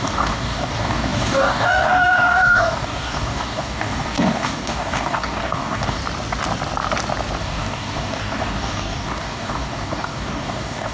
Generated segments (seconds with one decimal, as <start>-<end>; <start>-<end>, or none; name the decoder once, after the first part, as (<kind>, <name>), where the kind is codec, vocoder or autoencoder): 0.0-6.0 (codec, DAC); 7.4-10.9